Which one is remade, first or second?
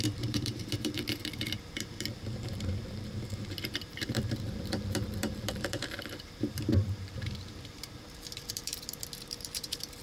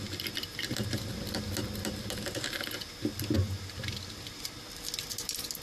first